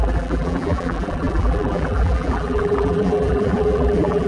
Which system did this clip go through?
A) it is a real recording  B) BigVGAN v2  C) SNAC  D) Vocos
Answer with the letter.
B